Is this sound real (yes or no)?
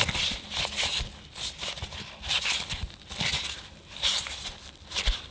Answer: yes